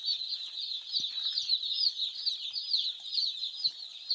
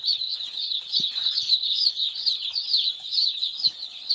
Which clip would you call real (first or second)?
first